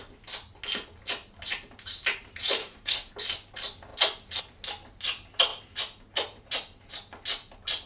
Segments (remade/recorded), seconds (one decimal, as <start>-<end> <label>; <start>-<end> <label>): 0.0-2.6 recorded; 2.6-3.1 remade; 3.1-7.9 recorded

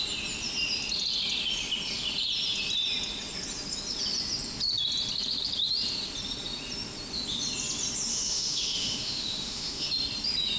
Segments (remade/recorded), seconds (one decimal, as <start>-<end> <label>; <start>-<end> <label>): 0.0-8.1 recorded; 8.1-9.9 remade; 9.9-10.6 recorded

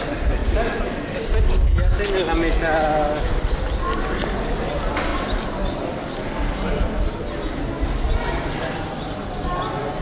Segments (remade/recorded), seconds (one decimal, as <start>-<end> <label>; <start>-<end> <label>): 0.0-10.0 recorded

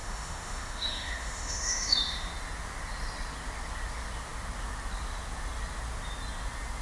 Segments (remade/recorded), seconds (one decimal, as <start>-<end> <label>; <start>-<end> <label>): 0.0-2.3 remade; 2.3-6.8 recorded